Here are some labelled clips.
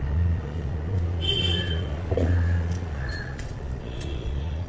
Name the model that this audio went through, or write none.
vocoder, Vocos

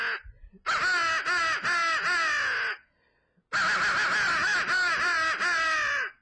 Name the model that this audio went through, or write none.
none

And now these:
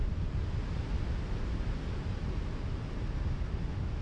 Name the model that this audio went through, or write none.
none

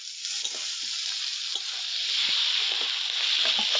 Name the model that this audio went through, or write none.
none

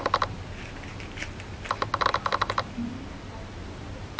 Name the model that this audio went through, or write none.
none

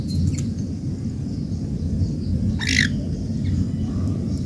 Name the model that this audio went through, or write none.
none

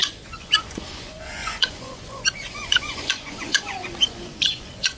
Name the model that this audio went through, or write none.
vocoder, Vocos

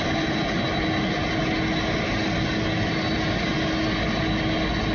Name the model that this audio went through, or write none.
none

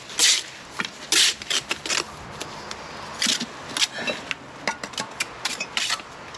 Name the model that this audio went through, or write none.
none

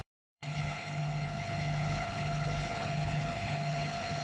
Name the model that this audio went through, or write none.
codec, HILCodec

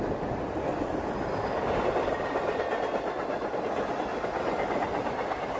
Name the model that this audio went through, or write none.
none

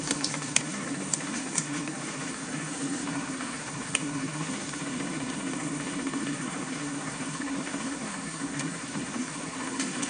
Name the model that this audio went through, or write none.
codec, SNAC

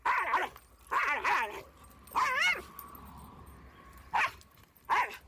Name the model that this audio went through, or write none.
none